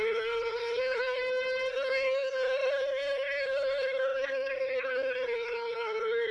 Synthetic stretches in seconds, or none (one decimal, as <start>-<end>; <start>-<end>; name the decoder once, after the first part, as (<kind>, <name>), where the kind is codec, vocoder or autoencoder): 0.0-1.2 (codec, SNAC); 1.7-6.3